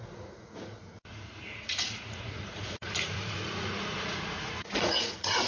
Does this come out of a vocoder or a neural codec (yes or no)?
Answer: yes